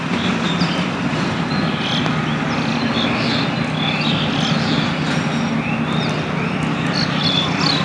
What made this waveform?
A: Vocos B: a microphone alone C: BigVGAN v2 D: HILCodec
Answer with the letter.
B